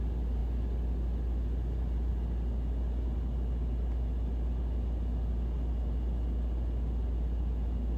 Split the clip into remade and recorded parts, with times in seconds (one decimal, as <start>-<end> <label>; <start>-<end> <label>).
0.0-8.0 recorded